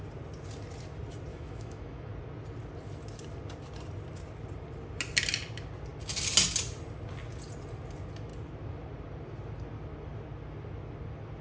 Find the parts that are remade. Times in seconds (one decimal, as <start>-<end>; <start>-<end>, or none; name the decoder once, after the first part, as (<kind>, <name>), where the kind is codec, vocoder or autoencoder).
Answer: 1.3-2.1 (autoencoder, DAC-VAE)